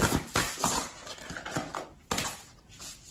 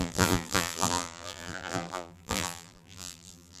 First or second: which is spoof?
second